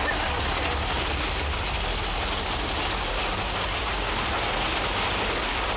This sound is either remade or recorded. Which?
recorded